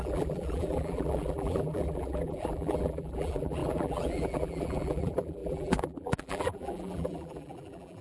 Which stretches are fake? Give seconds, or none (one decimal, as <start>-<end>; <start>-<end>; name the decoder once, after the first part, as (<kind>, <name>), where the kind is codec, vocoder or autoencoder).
0.0-8.0 (vocoder, BigVGAN v2)